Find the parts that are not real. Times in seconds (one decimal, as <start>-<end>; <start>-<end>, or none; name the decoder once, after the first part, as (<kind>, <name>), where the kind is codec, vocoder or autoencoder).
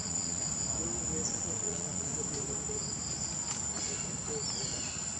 0.0-0.4 (vocoder, Vocos); 1.3-2.1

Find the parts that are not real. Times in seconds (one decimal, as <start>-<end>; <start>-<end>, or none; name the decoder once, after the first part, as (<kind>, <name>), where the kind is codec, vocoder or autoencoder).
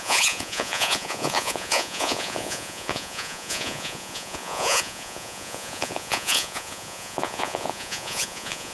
0.0-8.7 (vocoder, Vocos)